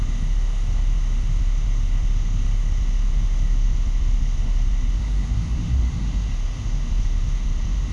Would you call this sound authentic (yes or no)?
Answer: no